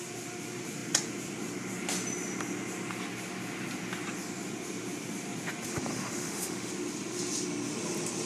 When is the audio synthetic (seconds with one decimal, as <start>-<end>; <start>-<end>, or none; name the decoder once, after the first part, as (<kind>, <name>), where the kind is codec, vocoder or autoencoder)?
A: 5.9-6.7 (autoencoder, DAC-VAE)